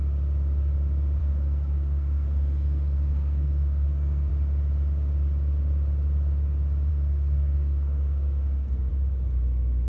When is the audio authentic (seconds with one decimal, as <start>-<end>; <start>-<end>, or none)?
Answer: 0.0-1.2; 4.3-6.9; 8.9-9.9